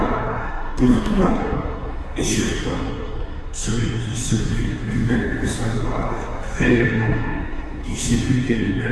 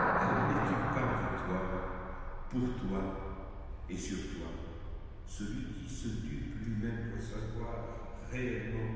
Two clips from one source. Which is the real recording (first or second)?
second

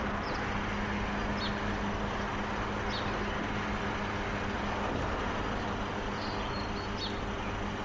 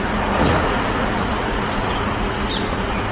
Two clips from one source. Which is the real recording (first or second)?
first